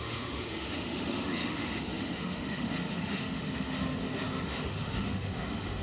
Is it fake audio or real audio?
fake